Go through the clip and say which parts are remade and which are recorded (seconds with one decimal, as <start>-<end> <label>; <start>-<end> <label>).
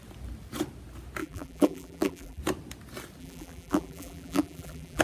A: 0.0-1.2 recorded; 1.2-2.4 remade; 2.4-3.2 recorded; 3.2-5.0 remade